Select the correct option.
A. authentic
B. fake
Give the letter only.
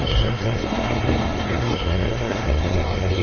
B